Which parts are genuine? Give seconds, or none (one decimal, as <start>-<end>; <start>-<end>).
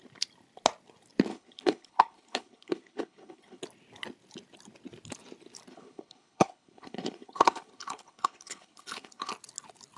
0.0-1.3; 3.6-5.7; 9.3-10.0